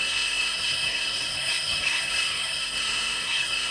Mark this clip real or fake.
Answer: fake